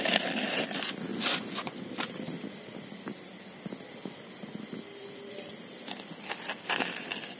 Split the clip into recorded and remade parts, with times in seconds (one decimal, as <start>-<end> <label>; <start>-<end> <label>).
0.0-1.1 recorded; 1.1-1.8 remade; 1.8-7.4 recorded